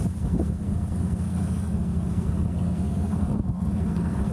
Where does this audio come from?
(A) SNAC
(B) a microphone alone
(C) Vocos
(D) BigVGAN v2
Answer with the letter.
A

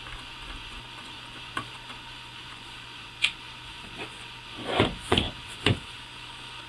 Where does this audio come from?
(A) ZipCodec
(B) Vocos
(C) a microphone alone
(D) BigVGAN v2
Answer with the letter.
B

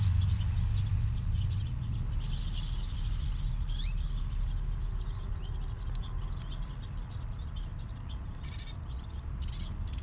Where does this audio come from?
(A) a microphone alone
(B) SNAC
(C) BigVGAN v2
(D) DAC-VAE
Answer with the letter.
A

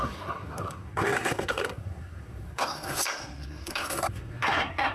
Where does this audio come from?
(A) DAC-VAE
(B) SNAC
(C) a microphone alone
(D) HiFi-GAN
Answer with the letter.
B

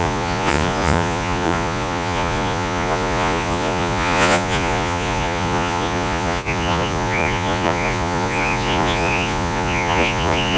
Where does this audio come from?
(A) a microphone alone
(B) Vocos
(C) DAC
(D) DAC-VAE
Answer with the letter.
B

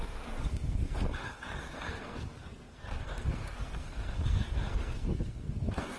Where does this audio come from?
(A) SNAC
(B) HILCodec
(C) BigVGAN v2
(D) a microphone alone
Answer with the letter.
A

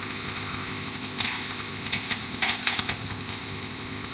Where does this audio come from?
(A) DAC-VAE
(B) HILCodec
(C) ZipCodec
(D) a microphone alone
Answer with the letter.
C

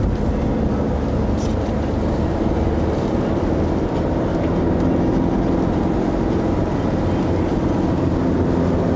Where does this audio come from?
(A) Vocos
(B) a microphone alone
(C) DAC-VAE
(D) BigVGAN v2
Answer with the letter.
B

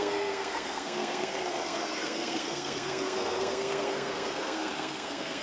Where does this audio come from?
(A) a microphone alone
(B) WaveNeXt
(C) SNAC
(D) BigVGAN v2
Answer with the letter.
C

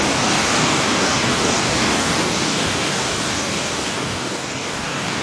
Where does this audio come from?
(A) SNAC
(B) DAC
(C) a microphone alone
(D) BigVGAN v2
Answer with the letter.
B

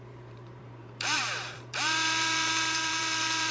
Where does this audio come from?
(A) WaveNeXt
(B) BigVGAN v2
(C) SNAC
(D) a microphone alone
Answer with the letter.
B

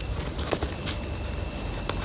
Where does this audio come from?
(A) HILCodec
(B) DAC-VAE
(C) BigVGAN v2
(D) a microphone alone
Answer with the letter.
D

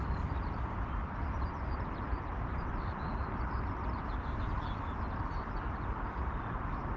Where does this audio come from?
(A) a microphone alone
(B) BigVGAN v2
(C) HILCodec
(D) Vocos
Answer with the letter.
A